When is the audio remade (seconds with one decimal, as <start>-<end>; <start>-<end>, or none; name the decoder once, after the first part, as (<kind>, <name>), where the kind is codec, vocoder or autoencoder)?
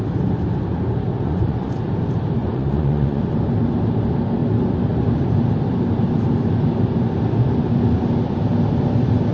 1.1-1.8 (vocoder, Vocos); 2.4-3.2